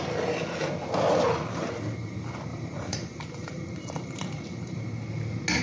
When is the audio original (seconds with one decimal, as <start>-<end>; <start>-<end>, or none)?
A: 0.0-2.5; 4.8-5.6